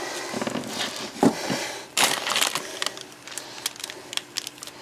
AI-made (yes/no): no